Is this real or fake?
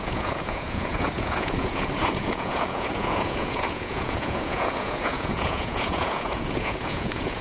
fake